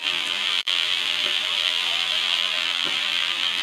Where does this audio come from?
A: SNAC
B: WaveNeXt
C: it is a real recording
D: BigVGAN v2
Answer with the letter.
D